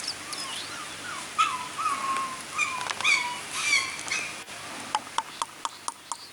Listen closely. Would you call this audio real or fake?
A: real